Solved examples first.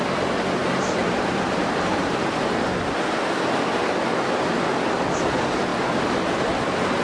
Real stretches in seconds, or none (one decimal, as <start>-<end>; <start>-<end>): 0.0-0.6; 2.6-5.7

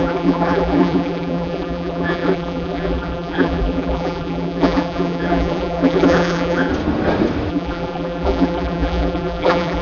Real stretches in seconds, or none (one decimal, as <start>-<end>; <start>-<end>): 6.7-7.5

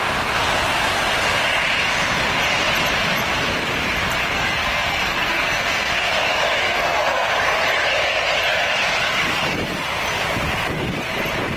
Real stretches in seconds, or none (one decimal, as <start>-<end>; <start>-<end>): 0.0-4.2; 6.1-6.6; 7.3-11.6

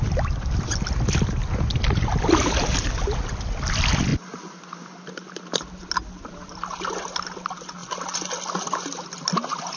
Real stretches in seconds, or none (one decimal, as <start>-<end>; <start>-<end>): 0.0-9.8

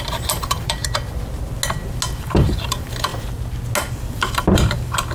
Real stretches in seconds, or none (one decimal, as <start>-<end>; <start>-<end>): 0.8-2.2; 3.1-3.9

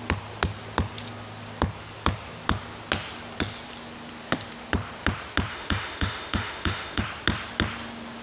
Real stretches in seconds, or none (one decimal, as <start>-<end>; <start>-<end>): 0.0-5.5; 7.0-8.2

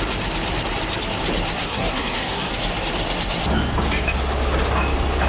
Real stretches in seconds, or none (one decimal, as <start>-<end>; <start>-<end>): 0.0-1.6; 2.5-5.3